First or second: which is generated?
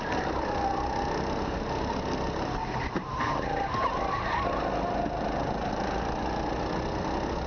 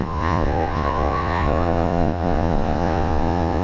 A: second